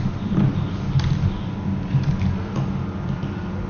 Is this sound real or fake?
real